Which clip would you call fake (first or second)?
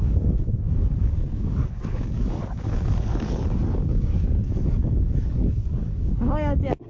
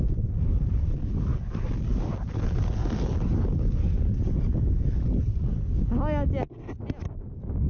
first